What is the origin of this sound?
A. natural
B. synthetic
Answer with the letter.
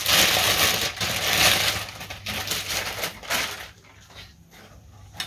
A